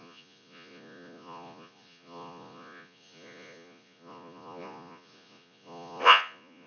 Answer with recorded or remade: remade